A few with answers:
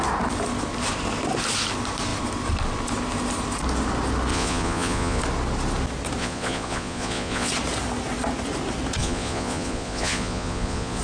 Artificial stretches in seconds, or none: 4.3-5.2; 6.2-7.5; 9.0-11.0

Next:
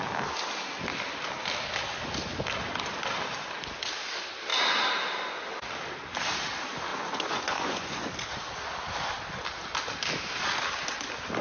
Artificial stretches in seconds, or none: 6.9-8.1